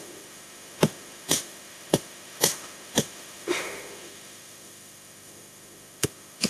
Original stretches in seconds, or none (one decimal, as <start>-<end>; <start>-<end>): none